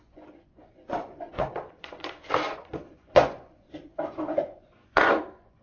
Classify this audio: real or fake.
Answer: fake